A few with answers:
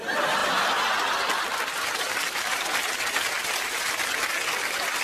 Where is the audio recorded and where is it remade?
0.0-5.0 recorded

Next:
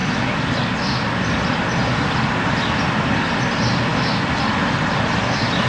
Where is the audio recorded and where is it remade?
0.0-5.7 recorded

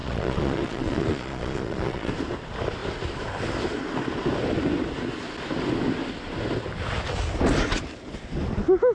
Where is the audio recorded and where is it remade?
0.0-2.1 remade; 2.1-8.9 recorded

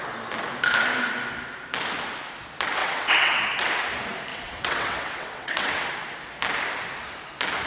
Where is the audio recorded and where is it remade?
0.0-2.8 recorded; 2.8-3.4 remade; 3.4-4.3 recorded; 4.3-5.9 remade; 5.9-7.7 recorded

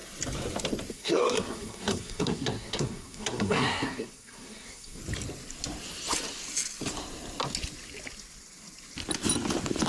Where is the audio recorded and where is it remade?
0.0-0.9 recorded; 0.9-5.0 remade; 5.0-9.9 recorded

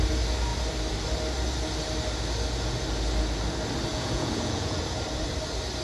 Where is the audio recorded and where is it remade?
0.0-3.9 recorded; 3.9-4.8 remade; 4.8-5.8 recorded

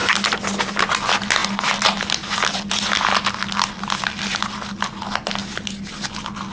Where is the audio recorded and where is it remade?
0.0-6.5 recorded

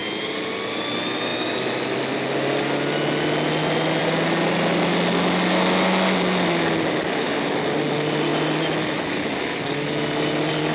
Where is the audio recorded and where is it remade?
0.0-10.7 recorded